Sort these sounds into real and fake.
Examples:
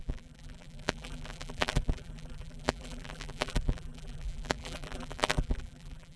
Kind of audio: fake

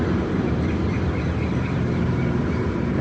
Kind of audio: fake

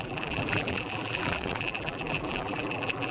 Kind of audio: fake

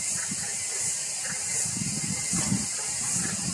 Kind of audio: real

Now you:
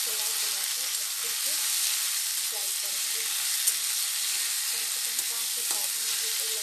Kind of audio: real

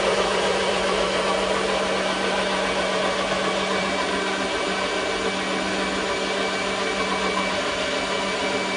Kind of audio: real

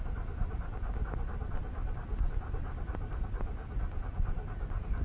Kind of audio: real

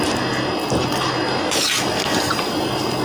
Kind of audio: real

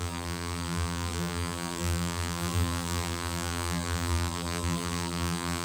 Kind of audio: fake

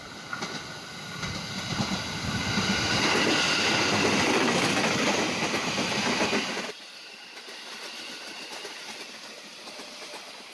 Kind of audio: real